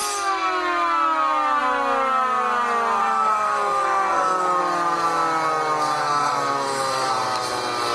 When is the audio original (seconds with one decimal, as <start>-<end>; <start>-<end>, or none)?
0.0-3.0; 4.6-6.0; 7.1-7.9